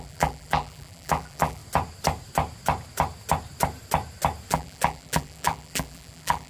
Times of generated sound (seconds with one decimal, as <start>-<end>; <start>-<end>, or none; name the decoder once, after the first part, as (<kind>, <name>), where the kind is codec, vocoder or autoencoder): 0.0-1.6 (vocoder, BigVGAN v2); 4.5-6.5